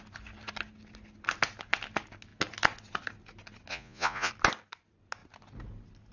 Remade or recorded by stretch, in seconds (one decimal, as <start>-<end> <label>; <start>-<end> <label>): 0.0-3.7 recorded; 3.7-4.3 remade; 4.3-6.1 recorded